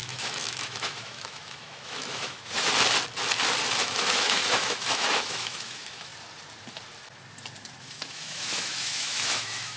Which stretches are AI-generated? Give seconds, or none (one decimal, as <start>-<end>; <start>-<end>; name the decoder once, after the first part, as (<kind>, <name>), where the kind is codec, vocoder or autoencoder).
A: 0.0-2.7 (autoencoder, DAC-VAE); 3.8-6.1; 7.8-9.8